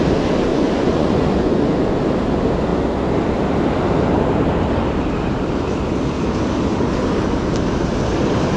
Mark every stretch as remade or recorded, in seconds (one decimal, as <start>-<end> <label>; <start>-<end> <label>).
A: 0.0-0.5 recorded; 0.5-2.0 remade; 2.0-8.6 recorded